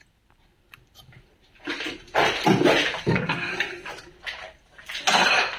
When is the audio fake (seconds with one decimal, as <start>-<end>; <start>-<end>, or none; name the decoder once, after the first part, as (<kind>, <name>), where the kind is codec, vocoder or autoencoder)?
3.0-3.5 (codec, SNAC)